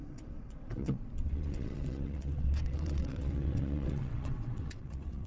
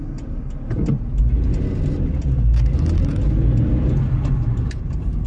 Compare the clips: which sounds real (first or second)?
second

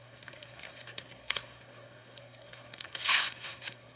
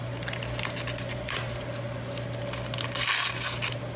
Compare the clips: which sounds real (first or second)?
second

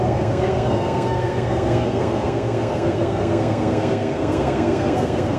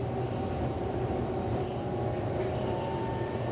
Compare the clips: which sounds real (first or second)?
second